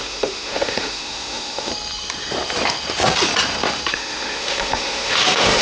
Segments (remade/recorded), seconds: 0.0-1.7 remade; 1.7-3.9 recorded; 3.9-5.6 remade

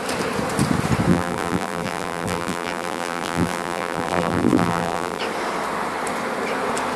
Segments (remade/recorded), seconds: 0.0-1.1 recorded; 1.1-5.2 remade; 5.2-7.0 recorded

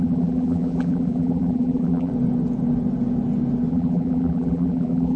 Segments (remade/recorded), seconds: 0.0-2.1 remade; 2.1-3.7 recorded; 3.7-5.2 remade

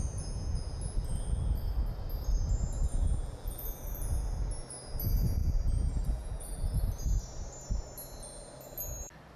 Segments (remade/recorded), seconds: 0.0-3.0 recorded; 3.0-3.9 remade; 3.9-5.4 recorded; 5.4-6.8 remade; 6.8-9.4 recorded

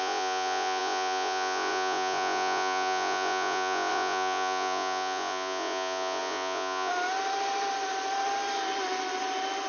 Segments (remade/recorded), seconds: 0.0-6.9 remade; 6.9-9.7 recorded

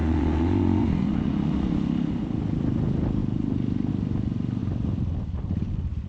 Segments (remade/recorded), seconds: 0.0-1.9 remade; 1.9-6.1 recorded